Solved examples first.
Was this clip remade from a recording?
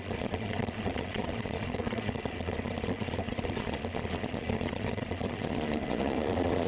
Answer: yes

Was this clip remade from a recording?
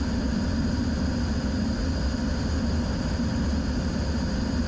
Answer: no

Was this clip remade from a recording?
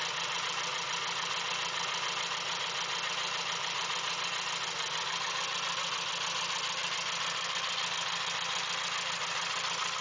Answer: no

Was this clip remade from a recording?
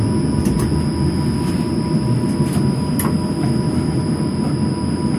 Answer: no